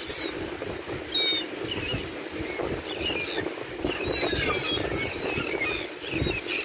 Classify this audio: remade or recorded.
recorded